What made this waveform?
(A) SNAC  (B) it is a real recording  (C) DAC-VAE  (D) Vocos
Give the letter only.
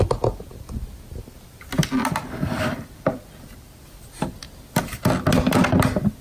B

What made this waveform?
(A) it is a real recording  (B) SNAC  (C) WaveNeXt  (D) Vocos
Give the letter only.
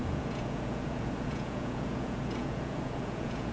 D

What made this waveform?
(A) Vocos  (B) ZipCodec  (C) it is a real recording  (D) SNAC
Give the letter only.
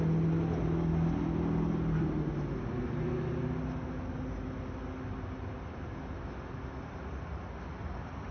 C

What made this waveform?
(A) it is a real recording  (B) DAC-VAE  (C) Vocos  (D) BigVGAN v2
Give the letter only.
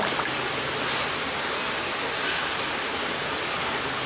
A